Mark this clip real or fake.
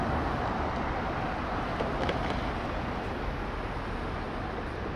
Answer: real